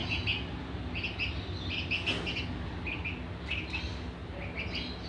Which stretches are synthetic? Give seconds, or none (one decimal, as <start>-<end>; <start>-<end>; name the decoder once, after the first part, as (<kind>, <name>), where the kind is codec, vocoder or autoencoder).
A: none